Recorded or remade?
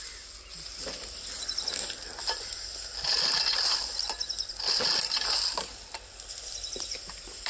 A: recorded